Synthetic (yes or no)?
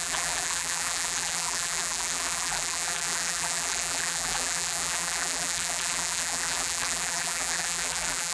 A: yes